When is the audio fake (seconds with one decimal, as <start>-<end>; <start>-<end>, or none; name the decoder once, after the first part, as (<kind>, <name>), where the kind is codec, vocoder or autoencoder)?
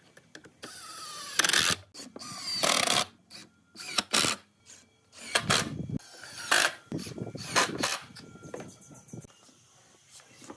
none